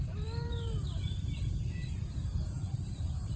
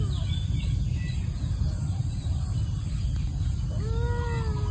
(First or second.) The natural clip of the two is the second